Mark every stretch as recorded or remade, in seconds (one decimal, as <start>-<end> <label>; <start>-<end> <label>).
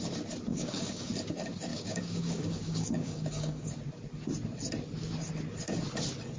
0.0-0.5 recorded; 0.5-1.1 remade; 1.1-1.7 recorded; 1.7-3.7 remade; 3.7-6.4 recorded